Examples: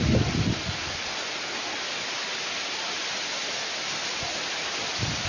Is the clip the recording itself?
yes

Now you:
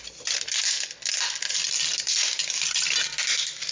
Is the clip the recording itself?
yes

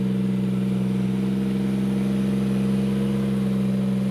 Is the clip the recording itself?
yes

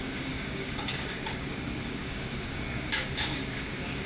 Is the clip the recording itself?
no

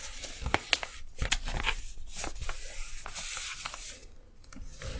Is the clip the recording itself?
yes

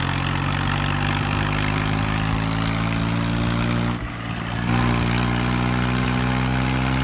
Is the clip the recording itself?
yes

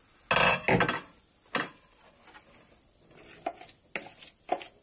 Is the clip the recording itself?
yes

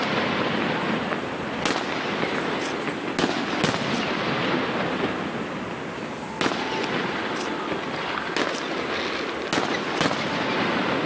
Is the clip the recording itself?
yes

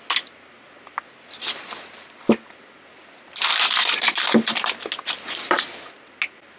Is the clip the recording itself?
yes